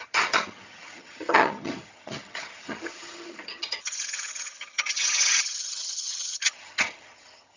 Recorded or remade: remade